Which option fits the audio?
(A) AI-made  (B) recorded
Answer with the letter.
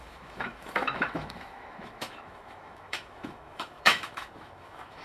A